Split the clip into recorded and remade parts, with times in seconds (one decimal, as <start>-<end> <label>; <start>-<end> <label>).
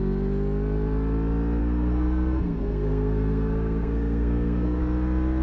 0.0-1.6 recorded; 1.6-4.8 remade; 4.8-5.4 recorded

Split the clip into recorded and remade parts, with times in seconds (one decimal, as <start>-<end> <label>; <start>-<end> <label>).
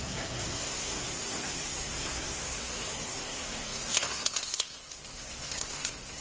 0.0-6.2 remade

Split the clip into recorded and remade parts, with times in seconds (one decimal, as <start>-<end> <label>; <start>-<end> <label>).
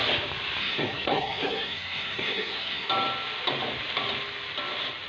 0.0-0.6 recorded; 0.6-2.9 remade; 2.9-5.1 recorded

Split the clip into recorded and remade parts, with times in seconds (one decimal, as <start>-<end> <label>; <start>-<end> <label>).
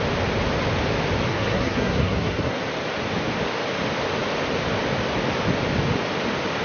0.0-1.3 recorded; 1.3-2.6 remade; 2.6-6.6 recorded